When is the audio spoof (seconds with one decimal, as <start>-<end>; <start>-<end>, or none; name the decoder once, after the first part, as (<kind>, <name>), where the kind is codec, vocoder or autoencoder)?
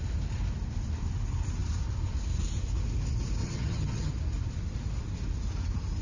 3.4-4.1 (vocoder, HiFi-GAN)